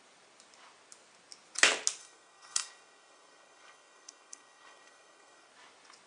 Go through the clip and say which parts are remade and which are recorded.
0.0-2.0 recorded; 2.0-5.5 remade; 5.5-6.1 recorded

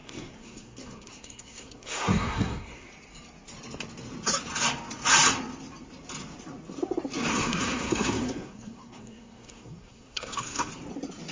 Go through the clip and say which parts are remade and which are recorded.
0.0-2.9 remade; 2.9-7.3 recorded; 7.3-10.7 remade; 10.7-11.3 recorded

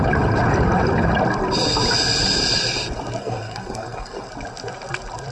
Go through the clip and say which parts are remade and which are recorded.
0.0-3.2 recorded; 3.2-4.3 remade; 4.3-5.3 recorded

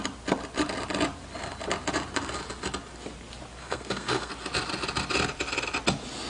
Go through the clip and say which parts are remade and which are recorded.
0.0-3.6 recorded; 3.6-4.3 remade; 4.3-6.3 recorded

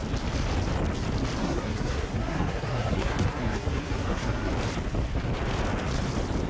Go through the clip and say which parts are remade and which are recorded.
0.0-1.4 recorded; 1.4-4.5 remade; 4.5-6.5 recorded